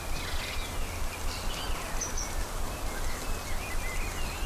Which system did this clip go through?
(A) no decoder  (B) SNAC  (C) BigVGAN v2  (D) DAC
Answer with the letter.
A